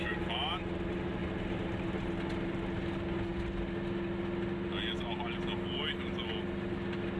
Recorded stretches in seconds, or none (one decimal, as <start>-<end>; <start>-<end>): 0.0-7.2